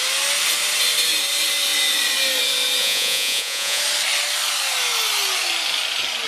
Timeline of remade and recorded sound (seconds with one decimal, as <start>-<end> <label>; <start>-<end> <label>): 0.0-2.8 recorded; 2.8-3.8 remade; 3.8-6.3 recorded